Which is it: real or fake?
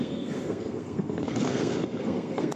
fake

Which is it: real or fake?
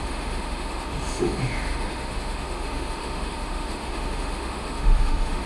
fake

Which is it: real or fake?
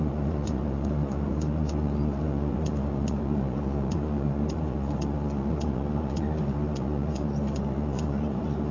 fake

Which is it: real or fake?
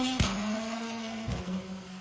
fake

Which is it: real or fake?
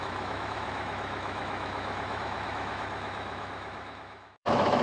fake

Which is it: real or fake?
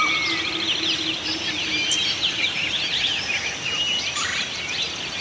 real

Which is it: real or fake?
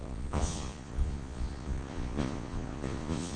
fake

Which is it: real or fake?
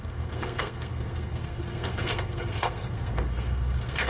fake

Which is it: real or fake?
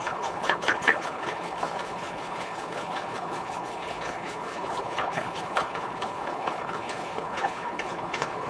fake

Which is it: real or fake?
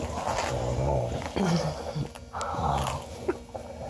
real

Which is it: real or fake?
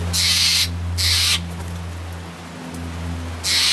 real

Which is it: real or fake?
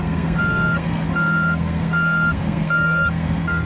fake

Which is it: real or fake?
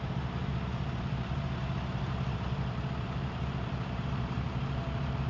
fake